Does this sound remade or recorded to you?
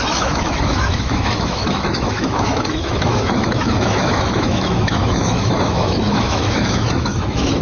remade